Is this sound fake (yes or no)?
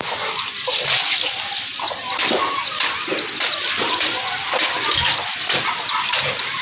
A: yes